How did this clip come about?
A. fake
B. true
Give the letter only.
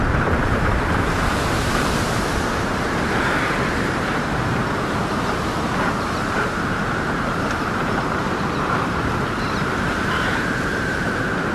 A